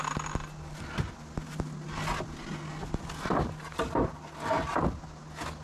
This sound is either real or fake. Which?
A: real